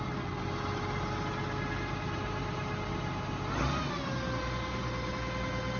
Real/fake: real